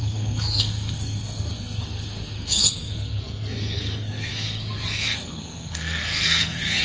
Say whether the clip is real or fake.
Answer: fake